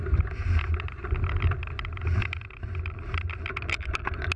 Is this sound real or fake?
real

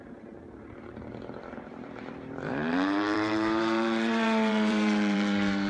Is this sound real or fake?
fake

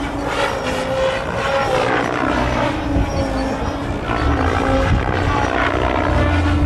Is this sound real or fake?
real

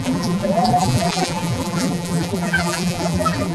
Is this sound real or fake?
fake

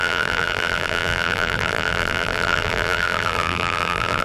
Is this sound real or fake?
fake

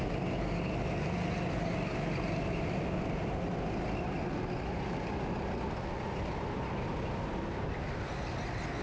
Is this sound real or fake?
real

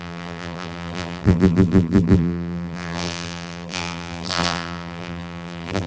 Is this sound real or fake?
fake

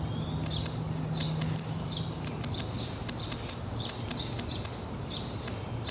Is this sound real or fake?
real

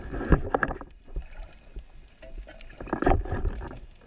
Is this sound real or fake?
fake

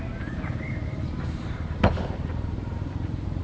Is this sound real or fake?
fake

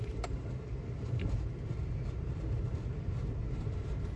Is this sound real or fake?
fake